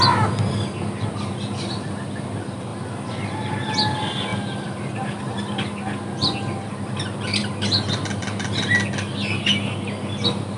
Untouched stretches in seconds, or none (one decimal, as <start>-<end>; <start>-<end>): 0.0-4.3; 5.2-7.4; 8.9-10.6